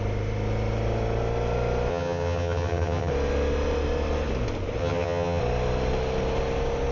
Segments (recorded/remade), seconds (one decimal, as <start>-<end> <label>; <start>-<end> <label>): 0.0-1.9 recorded; 1.9-3.1 remade; 3.1-4.8 recorded; 4.8-5.4 remade; 5.4-6.9 recorded